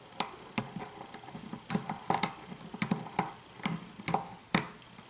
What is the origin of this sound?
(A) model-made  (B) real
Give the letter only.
B